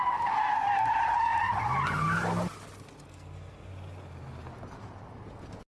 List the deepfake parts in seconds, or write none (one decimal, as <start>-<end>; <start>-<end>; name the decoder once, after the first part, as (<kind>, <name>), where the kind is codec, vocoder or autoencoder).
3.1-3.7 (codec, SNAC)